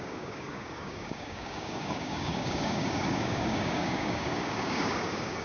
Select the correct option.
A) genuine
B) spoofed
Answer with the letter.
B